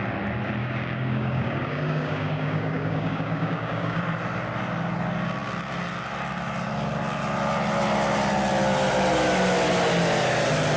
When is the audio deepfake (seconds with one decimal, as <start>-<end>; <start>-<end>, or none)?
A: 0.6-4.0